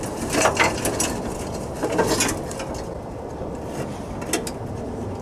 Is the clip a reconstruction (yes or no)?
no